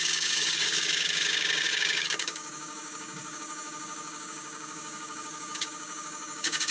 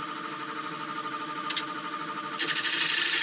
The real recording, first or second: second